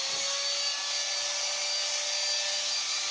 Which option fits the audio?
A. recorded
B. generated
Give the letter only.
A